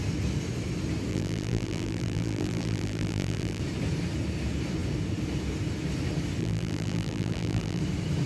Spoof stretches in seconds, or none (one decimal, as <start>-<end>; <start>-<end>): 1.1-3.6; 6.4-7.8